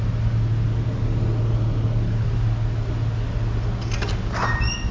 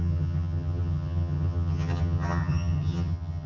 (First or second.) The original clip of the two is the first